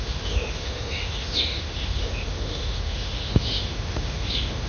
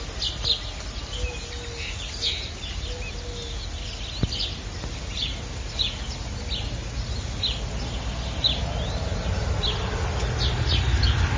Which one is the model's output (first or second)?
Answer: first